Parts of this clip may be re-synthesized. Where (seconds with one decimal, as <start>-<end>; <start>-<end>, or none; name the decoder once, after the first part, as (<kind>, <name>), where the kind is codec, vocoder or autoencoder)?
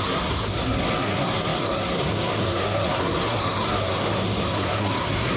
0.0-5.4 (codec, SNAC)